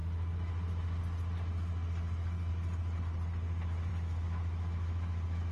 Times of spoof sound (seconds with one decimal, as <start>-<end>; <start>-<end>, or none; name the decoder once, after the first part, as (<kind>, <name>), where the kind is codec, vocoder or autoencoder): 3.9-5.5 (autoencoder, DAC-VAE)